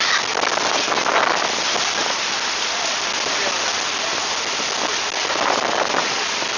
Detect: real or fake real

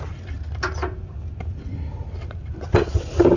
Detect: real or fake real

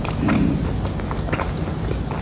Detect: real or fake real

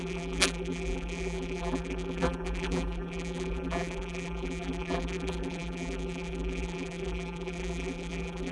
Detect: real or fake fake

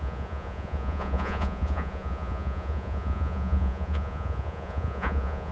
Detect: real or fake fake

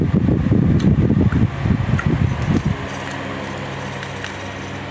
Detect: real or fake real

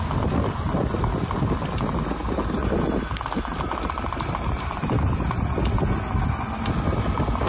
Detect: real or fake real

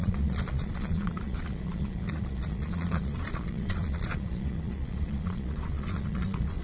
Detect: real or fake fake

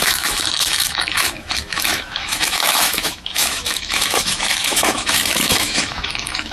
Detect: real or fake fake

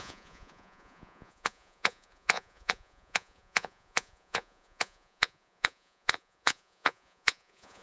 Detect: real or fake fake